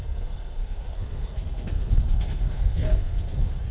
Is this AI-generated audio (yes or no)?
yes